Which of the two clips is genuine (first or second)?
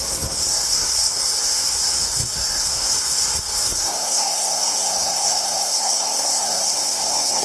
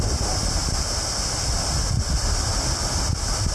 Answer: second